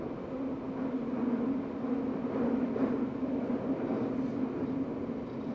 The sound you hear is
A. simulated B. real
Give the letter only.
B